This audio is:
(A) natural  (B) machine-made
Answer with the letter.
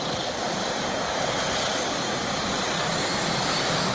A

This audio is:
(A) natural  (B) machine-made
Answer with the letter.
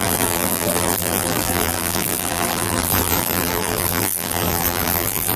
B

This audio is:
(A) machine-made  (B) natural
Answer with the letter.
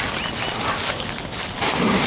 B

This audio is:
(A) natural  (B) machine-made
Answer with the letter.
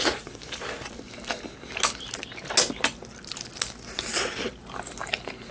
A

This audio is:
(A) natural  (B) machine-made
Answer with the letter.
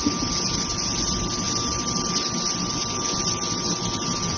A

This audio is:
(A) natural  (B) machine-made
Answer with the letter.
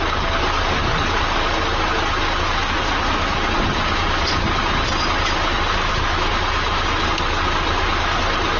A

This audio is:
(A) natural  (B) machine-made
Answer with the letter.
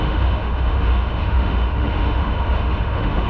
B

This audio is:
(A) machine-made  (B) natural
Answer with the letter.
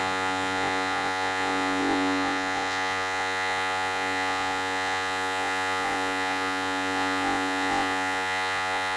A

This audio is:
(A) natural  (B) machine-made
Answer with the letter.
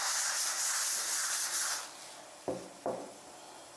A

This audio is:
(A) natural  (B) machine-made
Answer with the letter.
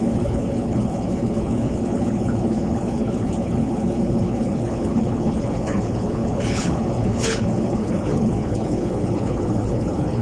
B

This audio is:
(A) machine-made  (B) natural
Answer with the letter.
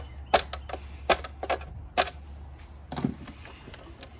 B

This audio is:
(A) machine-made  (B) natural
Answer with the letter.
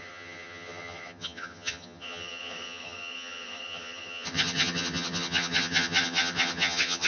A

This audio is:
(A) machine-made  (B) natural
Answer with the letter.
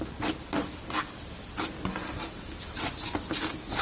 B